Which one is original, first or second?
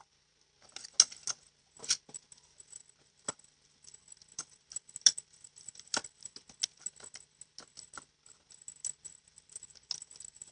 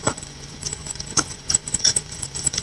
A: first